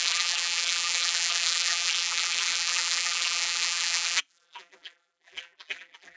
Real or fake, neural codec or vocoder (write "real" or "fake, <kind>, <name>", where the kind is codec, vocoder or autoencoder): fake, vocoder, BigVGAN v2